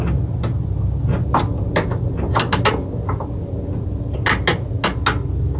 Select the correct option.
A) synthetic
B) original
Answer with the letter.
B